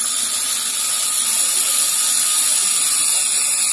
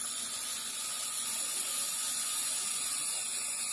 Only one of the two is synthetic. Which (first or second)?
second